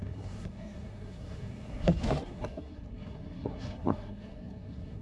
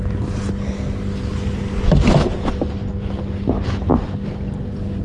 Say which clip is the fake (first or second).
first